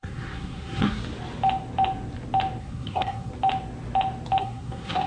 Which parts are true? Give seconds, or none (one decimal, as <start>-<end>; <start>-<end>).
1.0-2.6; 3.3-4.4